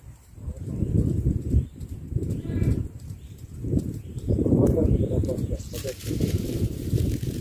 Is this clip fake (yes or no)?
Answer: yes